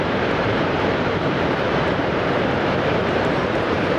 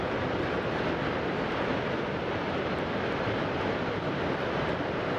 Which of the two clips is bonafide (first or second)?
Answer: second